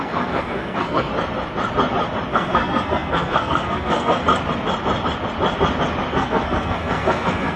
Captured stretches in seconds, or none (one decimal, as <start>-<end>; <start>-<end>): 1.1-2.3; 4.3-6.1